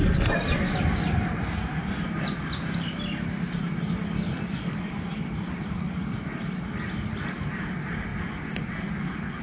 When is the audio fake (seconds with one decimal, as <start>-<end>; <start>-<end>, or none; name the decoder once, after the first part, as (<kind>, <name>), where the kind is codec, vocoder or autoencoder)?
none